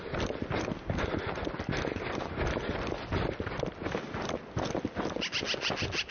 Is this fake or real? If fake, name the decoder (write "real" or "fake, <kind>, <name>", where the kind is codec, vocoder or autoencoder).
real